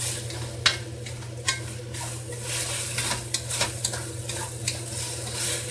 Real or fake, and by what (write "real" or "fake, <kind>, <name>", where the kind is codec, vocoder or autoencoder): real